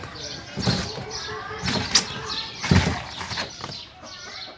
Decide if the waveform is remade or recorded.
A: recorded